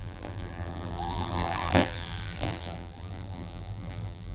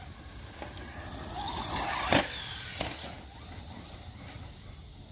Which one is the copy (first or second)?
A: first